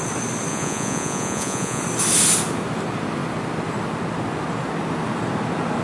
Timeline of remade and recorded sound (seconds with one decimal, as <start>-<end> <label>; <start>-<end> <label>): 0.0-0.5 recorded; 0.5-1.8 remade; 1.8-5.8 recorded